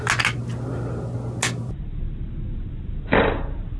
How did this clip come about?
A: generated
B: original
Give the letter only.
B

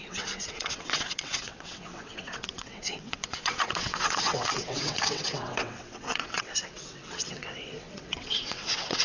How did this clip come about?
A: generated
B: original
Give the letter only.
A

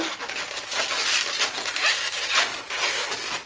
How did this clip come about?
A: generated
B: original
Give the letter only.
B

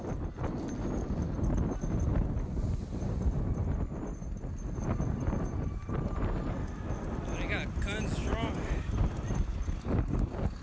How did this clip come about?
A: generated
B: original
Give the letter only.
B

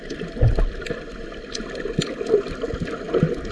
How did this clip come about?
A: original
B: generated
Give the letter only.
A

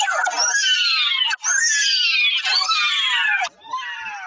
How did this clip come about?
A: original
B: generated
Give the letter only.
A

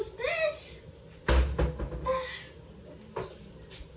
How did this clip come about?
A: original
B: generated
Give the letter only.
A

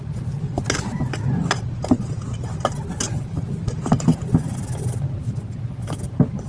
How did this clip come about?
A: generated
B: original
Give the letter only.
B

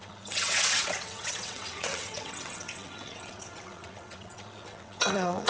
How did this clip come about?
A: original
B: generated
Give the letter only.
B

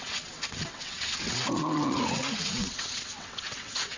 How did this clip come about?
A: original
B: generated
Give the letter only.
B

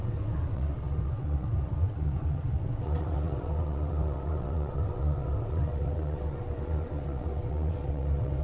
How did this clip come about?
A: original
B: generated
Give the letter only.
B